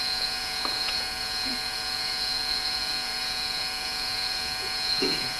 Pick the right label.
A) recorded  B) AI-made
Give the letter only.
B